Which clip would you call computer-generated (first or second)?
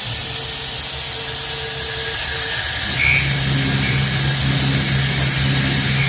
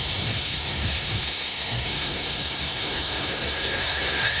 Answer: second